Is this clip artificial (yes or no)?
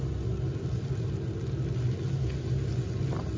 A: no